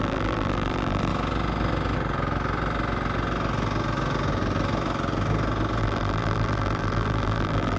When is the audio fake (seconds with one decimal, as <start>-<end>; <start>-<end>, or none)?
0.0-1.1; 5.8-7.8